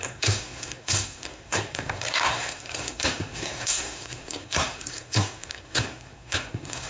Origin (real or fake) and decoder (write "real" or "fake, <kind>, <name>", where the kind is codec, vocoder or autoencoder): fake, codec, SNAC